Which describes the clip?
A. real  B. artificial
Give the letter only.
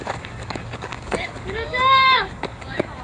B